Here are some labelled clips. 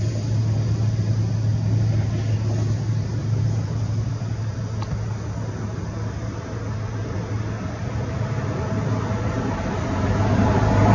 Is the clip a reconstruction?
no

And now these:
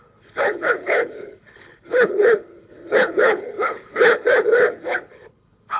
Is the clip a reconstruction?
yes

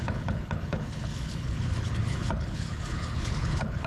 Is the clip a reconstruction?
yes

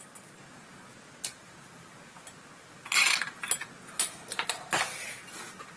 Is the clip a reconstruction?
no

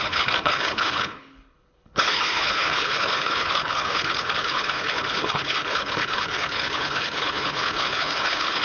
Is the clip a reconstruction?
yes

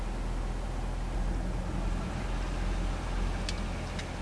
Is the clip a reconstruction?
no